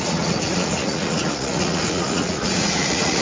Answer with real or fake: fake